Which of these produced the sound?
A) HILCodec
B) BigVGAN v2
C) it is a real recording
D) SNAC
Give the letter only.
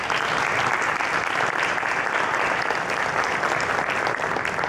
C